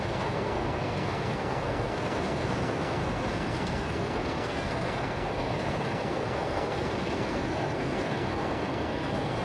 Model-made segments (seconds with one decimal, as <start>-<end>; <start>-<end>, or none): 0.0-9.4